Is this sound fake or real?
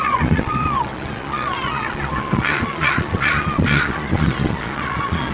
fake